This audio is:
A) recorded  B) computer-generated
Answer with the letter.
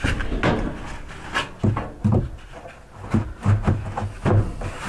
A